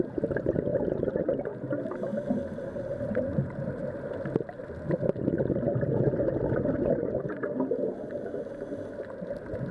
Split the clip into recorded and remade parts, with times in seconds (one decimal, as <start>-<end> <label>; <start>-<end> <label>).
0.0-9.7 recorded